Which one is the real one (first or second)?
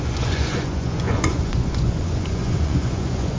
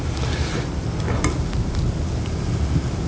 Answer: second